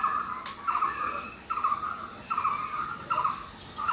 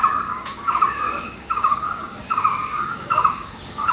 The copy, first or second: second